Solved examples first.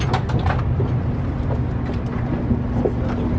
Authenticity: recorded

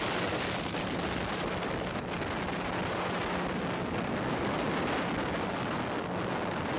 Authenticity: recorded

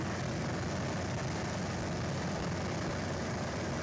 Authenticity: recorded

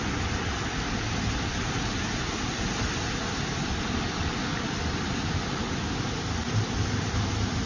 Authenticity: recorded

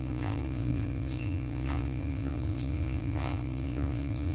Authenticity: remade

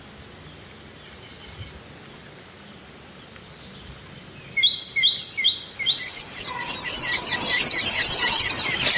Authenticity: recorded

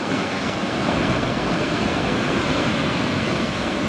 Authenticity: remade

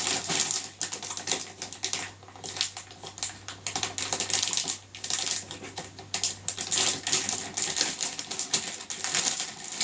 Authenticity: recorded